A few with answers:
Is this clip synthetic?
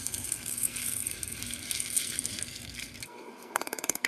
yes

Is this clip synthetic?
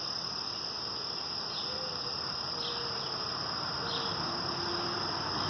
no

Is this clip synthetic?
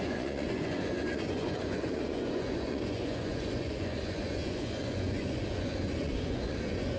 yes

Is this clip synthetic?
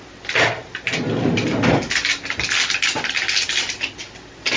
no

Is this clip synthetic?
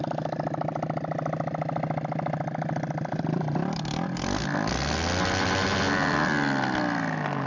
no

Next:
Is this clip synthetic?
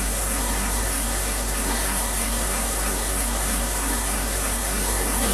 yes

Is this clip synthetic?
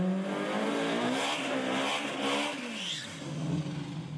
no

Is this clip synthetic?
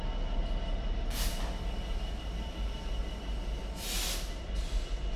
no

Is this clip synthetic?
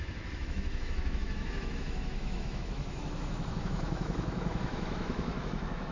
yes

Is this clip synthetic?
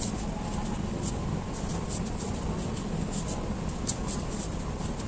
no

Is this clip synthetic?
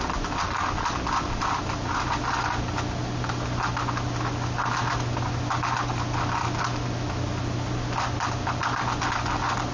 no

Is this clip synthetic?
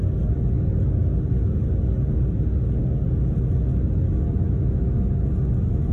no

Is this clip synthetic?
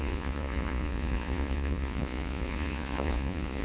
yes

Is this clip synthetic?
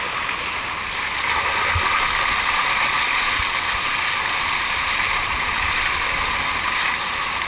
no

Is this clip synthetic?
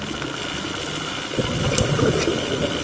no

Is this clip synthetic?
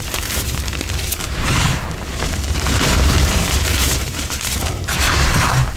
yes